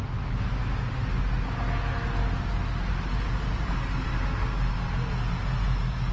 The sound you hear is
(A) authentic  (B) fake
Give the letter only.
A